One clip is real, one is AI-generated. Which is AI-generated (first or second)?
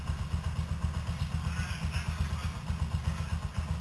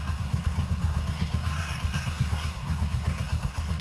second